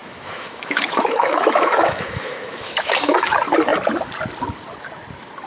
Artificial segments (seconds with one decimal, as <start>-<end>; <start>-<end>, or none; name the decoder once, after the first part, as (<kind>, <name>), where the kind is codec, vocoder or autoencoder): 0.0-3.3 (autoencoder, DAC-VAE)